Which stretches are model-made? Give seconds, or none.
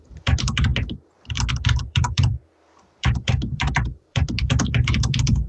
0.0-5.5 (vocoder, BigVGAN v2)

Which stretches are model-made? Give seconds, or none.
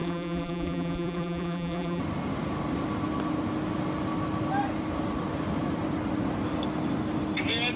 0.0-2.0 (vocoder, BigVGAN v2)